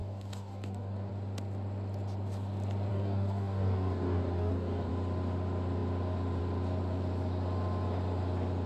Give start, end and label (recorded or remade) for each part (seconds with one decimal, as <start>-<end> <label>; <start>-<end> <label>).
0.0-1.1 remade; 1.1-2.9 recorded; 2.9-4.9 remade; 4.9-8.7 recorded